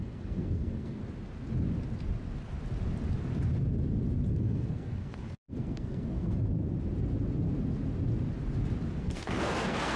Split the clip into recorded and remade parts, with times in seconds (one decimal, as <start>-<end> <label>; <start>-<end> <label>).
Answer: 0.0-1.0 remade; 1.0-4.3 recorded; 4.3-6.4 remade; 6.4-9.0 recorded; 9.0-10.0 remade